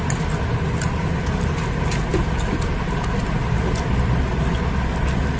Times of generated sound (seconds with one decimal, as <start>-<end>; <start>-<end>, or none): 2.1-4.2